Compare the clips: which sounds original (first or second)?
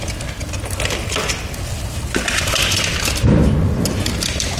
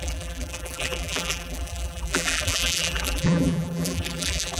first